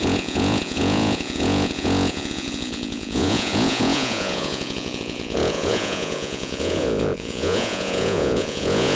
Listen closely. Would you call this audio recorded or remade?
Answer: remade